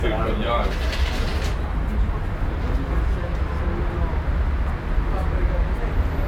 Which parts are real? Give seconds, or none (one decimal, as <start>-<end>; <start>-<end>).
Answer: 0.0-6.3